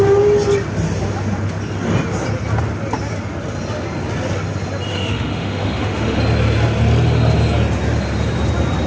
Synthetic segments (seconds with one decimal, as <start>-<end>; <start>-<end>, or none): 4.9-6.2